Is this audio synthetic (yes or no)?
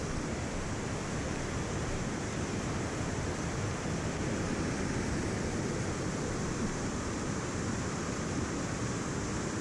yes